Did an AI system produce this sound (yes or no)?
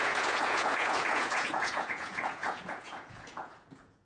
yes